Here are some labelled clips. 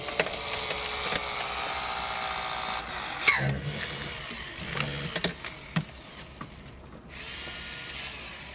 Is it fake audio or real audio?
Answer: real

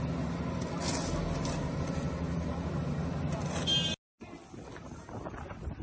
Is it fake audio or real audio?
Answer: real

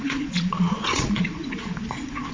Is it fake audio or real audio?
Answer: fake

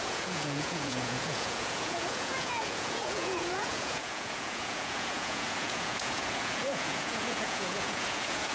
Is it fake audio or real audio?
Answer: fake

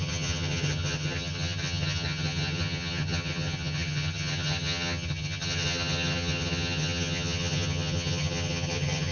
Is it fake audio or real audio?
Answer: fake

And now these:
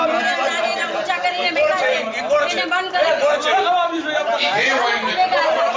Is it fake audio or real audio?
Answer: real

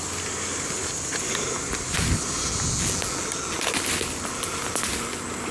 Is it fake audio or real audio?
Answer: real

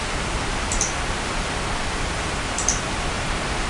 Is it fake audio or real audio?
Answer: real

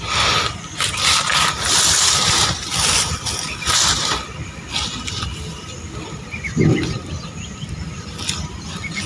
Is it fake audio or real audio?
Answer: real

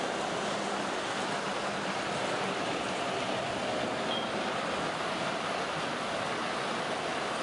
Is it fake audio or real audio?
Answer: real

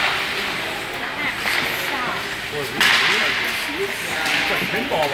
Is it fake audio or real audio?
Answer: real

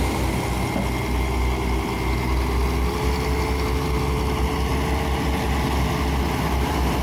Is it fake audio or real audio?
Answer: real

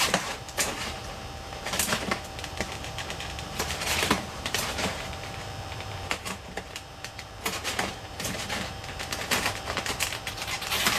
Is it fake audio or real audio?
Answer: fake